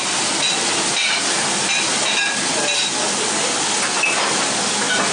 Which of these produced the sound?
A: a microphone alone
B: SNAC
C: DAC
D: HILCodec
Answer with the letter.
A